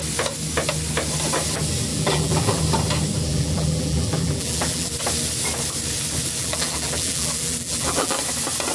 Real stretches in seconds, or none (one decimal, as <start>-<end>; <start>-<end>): 0.0-1.9; 2.6-3.3; 4.9-6.4; 8.2-8.7